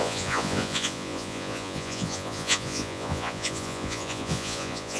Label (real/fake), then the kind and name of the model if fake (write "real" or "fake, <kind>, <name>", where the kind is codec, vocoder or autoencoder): fake, vocoder, Vocos